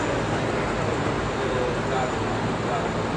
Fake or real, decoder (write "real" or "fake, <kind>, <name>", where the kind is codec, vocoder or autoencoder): real